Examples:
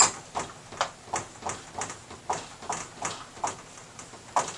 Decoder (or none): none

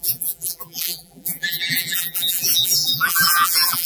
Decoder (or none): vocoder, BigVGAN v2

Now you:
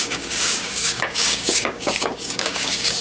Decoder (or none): codec, DAC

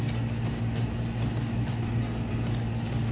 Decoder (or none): none